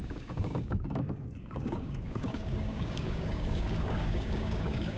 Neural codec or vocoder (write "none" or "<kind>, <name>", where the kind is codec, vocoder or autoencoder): codec, DAC